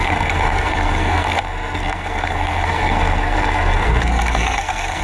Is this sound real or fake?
fake